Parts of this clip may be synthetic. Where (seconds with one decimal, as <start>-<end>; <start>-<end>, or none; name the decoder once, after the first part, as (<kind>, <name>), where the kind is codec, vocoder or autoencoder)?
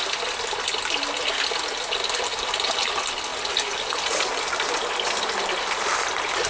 2.3-2.9 (vocoder, BigVGAN v2)